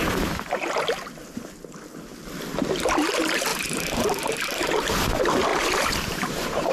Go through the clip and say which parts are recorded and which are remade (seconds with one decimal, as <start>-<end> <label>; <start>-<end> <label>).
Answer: 0.0-3.5 recorded; 3.5-4.7 remade; 4.7-5.5 recorded; 5.5-6.7 remade